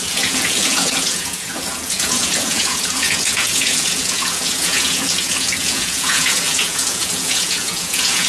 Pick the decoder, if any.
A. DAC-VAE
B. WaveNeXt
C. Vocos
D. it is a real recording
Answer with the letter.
C